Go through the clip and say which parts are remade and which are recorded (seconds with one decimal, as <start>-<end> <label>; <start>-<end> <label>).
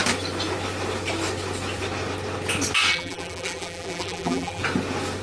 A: 0.0-2.9 recorded; 2.9-4.6 remade; 4.6-5.2 recorded